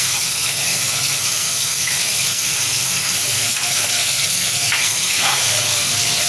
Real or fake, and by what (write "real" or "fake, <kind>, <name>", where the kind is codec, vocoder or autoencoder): fake, codec, SNAC